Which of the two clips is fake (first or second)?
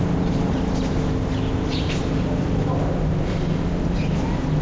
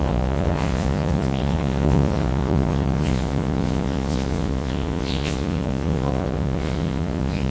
second